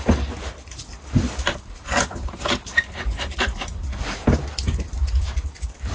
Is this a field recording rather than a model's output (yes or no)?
yes